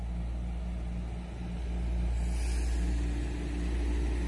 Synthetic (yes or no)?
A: no